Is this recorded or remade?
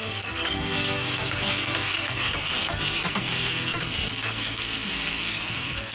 remade